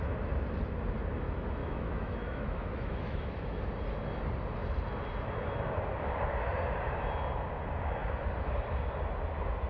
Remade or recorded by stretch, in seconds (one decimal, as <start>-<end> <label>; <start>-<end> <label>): 0.0-1.6 recorded; 1.6-3.6 remade; 3.6-9.7 recorded